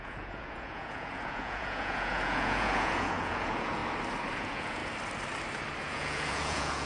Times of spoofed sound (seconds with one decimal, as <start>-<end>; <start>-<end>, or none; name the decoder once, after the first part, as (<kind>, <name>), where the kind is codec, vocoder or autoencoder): 0.0-3.8 (vocoder, Vocos); 4.3-4.8; 5.8-6.9